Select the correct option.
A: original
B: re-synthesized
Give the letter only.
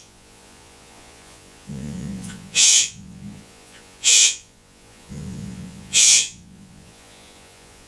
B